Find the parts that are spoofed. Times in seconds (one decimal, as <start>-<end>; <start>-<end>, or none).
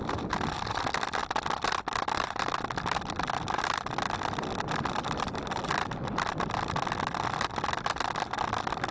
1.2-5.2; 5.7-6.3